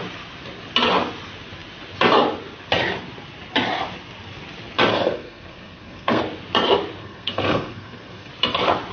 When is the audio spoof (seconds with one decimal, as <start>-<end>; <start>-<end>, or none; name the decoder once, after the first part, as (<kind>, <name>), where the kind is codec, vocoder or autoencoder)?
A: 4.9-6.2 (codec, SNAC); 7.0-8.3